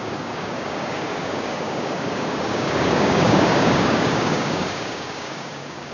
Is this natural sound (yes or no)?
no